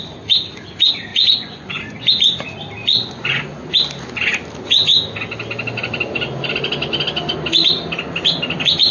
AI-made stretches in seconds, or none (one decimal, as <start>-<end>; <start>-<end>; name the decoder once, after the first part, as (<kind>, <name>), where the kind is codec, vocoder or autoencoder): 1.1-1.8 (vocoder, Vocos); 2.8-3.4

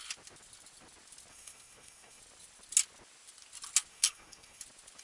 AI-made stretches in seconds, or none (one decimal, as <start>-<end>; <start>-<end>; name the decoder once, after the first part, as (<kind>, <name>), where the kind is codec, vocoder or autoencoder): 1.3-2.2 (codec, SNAC); 3.9-4.6

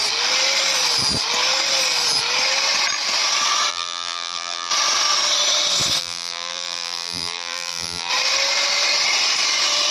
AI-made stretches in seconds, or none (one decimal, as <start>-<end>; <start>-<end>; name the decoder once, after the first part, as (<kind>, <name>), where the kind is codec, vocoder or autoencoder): 3.7-4.7 (vocoder, BigVGAN v2); 6.0-8.1

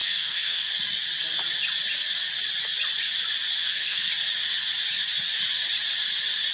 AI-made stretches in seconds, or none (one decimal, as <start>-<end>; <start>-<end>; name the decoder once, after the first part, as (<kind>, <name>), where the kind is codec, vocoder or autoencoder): 0.0-0.7 (codec, SNAC); 3.6-4.1

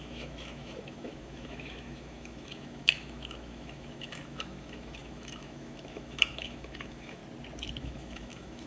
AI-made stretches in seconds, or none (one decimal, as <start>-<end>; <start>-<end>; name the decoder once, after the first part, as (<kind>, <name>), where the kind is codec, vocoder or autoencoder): 0.0-7.2 (autoencoder, DAC-VAE); 7.8-8.7